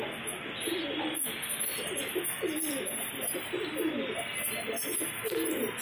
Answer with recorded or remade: recorded